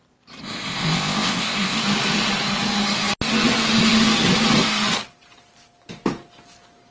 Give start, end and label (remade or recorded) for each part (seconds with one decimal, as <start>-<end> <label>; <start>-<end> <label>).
0.0-0.4 recorded; 0.4-1.8 remade; 1.8-6.9 recorded